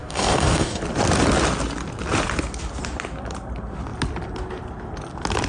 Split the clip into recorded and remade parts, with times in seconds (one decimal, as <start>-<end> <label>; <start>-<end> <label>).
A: 0.0-0.8 remade; 0.8-5.5 recorded